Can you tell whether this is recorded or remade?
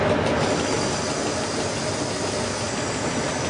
recorded